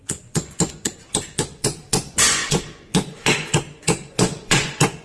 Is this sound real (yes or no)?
no